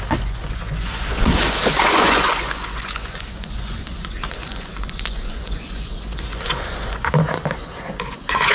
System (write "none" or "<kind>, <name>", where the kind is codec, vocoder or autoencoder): vocoder, Vocos